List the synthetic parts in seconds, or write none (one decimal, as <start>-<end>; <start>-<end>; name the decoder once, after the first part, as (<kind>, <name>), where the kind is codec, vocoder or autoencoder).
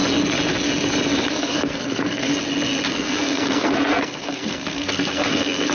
1.3-2.3 (codec, SNAC); 2.9-5.7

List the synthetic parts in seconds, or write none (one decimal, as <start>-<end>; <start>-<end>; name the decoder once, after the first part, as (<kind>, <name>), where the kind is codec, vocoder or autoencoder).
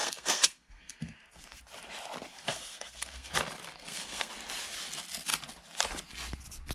0.0-1.6 (codec, SNAC); 2.3-3.3; 3.7-4.3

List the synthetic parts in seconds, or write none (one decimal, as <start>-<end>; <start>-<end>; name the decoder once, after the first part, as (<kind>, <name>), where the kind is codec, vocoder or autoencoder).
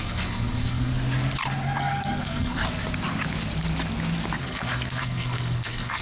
0.0-0.9 (codec, SNAC); 1.8-2.6; 4.4-6.0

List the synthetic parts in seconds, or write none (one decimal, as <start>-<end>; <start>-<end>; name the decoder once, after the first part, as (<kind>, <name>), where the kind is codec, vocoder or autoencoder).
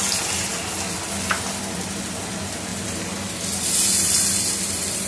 none